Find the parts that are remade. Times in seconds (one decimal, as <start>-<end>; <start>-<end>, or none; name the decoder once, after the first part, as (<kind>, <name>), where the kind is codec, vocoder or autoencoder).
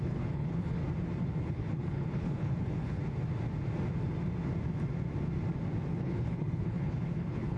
0.0-0.8 (codec, HILCodec); 1.4-3.0; 5.9-7.6